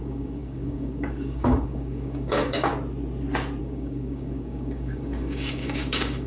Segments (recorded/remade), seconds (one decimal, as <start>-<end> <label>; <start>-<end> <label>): 0.0-2.7 remade; 2.7-3.6 recorded; 3.6-6.3 remade